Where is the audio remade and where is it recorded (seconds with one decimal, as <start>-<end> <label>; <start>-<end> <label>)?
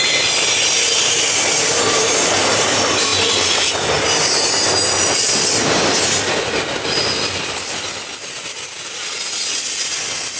0.0-10.4 recorded